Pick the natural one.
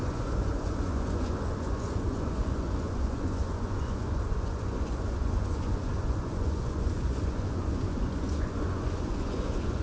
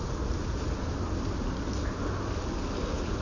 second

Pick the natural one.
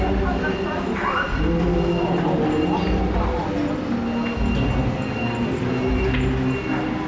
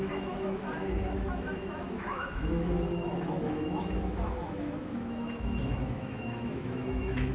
first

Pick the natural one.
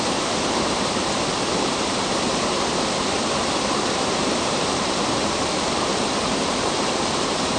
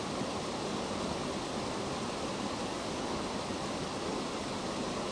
second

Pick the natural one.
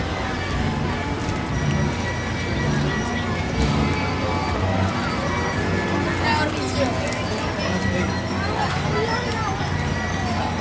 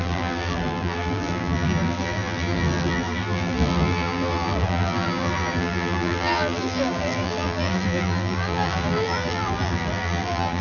first